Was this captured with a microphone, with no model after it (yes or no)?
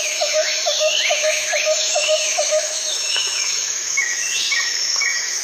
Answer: no